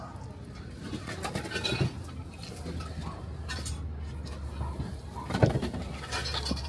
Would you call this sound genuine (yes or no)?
yes